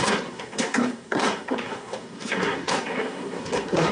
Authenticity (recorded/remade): remade